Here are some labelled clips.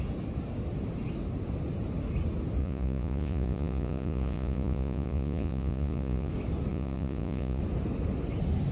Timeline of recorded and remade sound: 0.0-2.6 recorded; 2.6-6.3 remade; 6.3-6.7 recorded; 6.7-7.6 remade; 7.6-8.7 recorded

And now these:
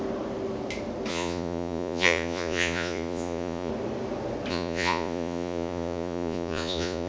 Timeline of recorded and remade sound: 0.0-1.1 recorded; 1.1-3.7 remade; 3.7-4.5 recorded; 4.5-7.1 remade

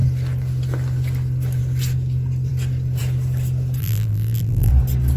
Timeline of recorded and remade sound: 0.0-3.8 recorded; 3.8-4.7 remade; 4.7-5.2 recorded

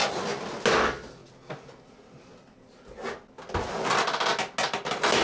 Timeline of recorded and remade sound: 0.0-5.2 recorded

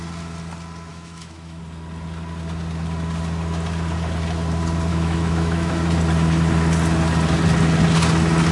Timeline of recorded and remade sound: 0.0-0.9 recorded; 0.9-1.6 remade; 1.6-4.9 recorded; 4.9-5.8 remade; 5.8-8.5 recorded

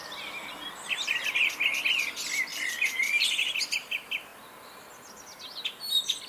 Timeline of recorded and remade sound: 0.0-2.5 recorded; 2.5-3.5 remade; 3.5-6.3 recorded

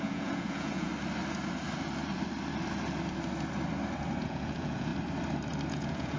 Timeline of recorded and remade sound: 0.0-0.9 remade; 0.9-4.2 recorded; 4.2-4.9 remade; 4.9-5.7 recorded; 5.7-6.2 remade